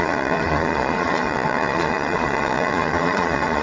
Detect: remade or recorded remade